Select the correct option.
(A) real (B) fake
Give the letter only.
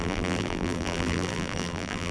B